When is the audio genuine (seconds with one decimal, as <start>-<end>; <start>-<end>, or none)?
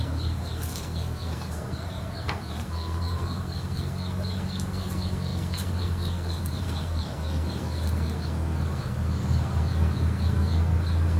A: none